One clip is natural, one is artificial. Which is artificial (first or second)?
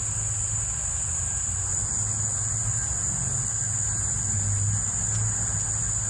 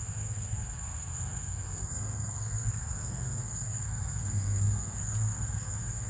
second